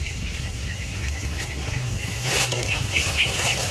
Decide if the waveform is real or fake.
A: fake